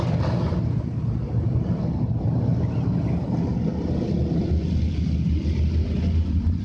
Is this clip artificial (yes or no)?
no